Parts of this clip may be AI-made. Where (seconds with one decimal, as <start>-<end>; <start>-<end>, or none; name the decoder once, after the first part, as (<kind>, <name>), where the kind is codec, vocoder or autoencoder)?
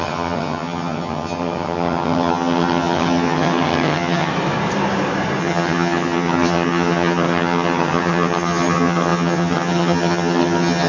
0.0-4.3 (vocoder, HiFi-GAN); 5.4-10.9